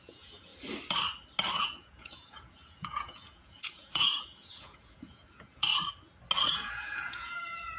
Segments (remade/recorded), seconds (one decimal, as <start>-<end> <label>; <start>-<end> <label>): 0.0-0.5 remade; 0.5-1.6 recorded; 1.6-5.7 remade; 5.7-6.5 recorded; 6.5-7.8 remade